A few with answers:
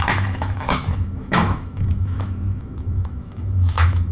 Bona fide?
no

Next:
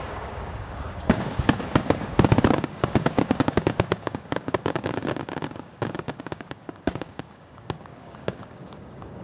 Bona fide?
no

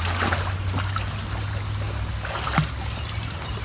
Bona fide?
yes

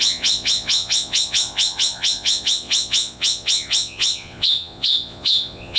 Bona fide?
no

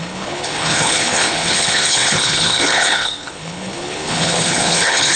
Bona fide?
no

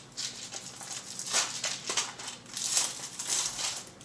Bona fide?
yes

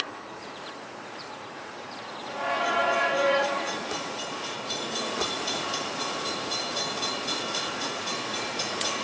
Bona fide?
no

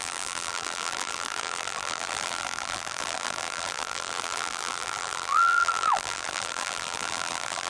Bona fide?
no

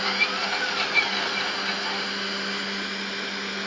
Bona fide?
yes